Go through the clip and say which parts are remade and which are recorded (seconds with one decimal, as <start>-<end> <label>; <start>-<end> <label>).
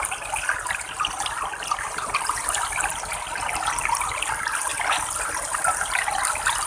0.0-6.7 recorded